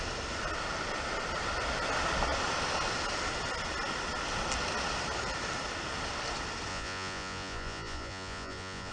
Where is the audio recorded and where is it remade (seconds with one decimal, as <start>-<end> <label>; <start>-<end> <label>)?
0.0-6.7 recorded; 6.7-8.9 remade